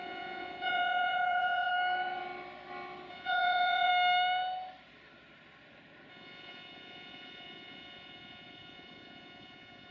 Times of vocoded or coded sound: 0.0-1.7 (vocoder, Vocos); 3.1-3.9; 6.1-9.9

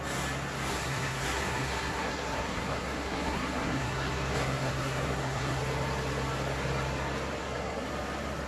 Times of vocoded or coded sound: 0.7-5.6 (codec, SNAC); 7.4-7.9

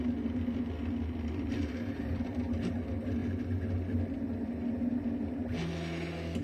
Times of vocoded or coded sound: none

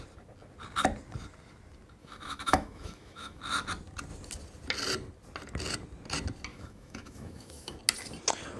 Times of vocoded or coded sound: 2.0-3.4 (autoencoder, DAC-VAE); 6.5-7.8